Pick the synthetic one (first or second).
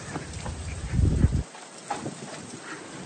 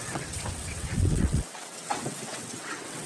second